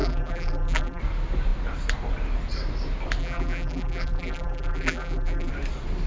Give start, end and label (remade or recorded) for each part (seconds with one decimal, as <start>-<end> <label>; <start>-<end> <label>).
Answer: 0.0-1.0 remade; 1.0-3.2 recorded; 3.2-5.5 remade; 5.5-6.1 recorded